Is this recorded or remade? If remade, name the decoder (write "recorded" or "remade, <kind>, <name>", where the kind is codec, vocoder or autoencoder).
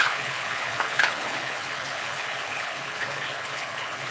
remade, codec, HILCodec